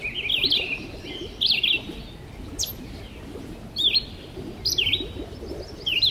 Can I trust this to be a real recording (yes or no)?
yes